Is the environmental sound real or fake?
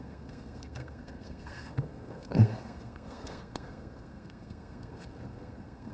fake